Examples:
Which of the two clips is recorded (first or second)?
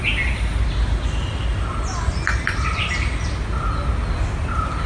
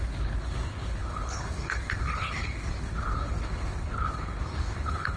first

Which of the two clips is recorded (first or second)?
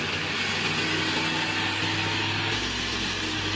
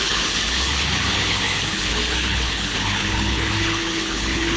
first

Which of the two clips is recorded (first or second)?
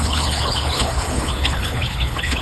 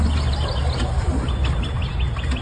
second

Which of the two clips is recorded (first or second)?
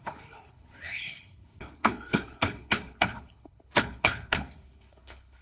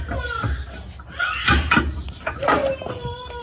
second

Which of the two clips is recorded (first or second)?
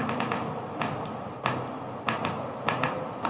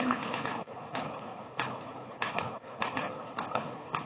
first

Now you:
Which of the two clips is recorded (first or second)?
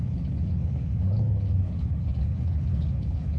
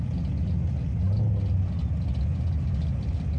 second